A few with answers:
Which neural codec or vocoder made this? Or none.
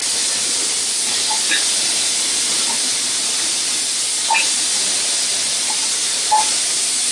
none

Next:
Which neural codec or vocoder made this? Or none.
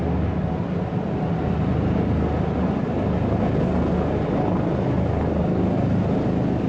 none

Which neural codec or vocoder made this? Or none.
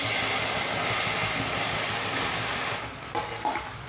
none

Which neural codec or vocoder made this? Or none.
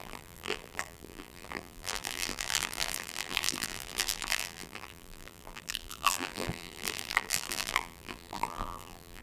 vocoder, BigVGAN v2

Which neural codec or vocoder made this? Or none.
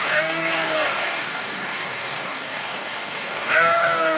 codec, DAC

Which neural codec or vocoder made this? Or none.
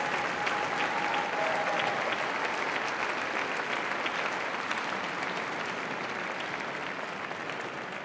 none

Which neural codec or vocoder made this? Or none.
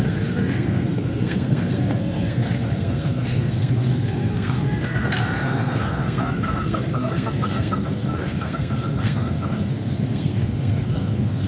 codec, SNAC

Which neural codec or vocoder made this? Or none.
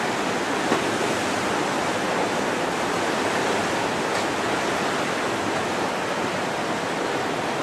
none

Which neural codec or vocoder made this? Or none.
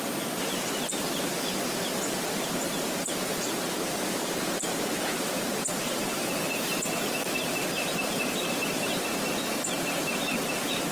vocoder, BigVGAN v2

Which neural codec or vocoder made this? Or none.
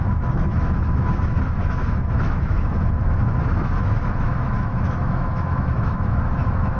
autoencoder, DAC-VAE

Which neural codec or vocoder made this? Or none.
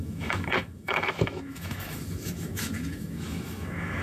autoencoder, DAC-VAE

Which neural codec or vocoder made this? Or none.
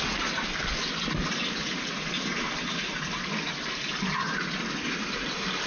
none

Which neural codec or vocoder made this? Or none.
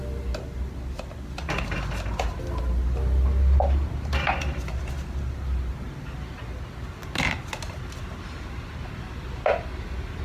none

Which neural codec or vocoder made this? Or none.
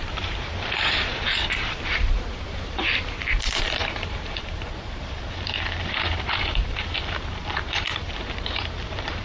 vocoder, BigVGAN v2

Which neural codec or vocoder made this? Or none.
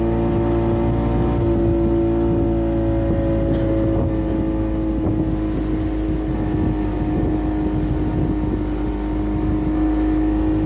none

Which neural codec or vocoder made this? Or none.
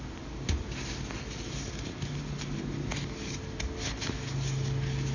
none